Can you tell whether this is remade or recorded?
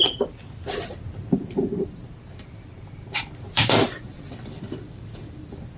remade